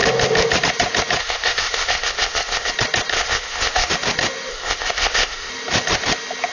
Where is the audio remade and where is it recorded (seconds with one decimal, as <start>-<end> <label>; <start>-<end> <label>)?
0.0-1.2 recorded; 1.2-2.7 remade; 2.7-3.1 recorded; 3.1-3.9 remade; 3.9-4.5 recorded; 4.5-5.5 remade; 5.5-6.5 recorded